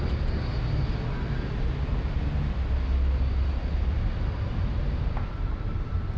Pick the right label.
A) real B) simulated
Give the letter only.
A